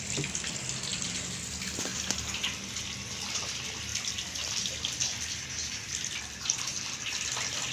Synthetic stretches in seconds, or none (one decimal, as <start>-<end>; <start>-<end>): none